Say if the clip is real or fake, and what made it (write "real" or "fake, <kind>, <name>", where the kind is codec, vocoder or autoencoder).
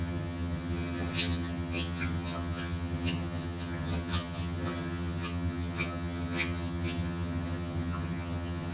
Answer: fake, vocoder, HiFi-GAN